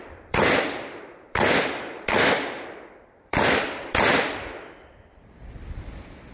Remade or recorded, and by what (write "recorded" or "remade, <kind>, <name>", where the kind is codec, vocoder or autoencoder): remade, vocoder, BigVGAN v2